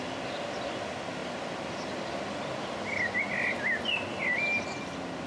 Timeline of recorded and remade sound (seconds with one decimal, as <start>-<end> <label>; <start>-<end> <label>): 0.0-5.3 recorded